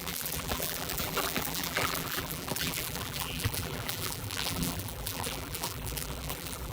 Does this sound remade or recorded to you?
remade